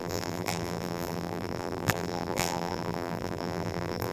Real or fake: fake